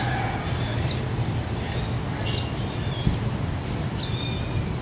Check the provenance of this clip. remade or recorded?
recorded